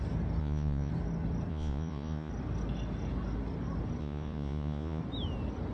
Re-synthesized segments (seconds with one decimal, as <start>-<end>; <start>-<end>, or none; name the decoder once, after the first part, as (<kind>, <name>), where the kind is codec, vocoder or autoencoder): 0.4-0.9 (vocoder, Vocos); 1.5-2.3; 4.0-5.0